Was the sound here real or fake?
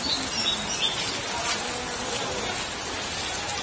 real